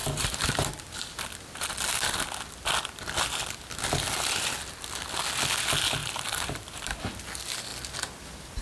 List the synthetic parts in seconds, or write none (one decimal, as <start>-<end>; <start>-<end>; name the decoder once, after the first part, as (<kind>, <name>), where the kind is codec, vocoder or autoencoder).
0.0-0.7 (vocoder, BigVGAN v2); 6.0-7.0